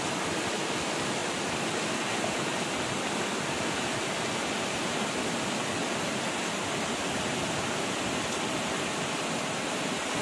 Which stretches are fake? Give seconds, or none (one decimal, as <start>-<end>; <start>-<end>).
none